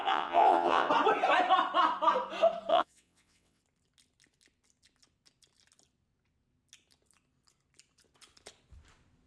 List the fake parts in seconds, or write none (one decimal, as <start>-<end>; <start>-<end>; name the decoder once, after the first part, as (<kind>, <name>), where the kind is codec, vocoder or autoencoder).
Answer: 0.0-0.9 (vocoder, WaveNeXt); 2.7-3.6